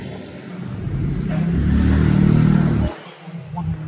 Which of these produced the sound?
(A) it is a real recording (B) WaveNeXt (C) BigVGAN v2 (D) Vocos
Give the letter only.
A